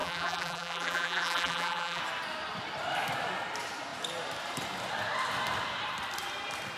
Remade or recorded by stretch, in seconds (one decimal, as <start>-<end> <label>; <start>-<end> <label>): 0.0-2.0 remade; 2.0-6.8 recorded